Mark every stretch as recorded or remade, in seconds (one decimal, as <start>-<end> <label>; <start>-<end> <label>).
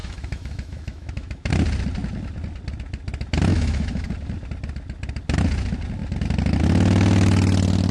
0.0-1.5 remade; 1.5-3.5 recorded; 3.5-4.1 remade; 4.1-7.9 recorded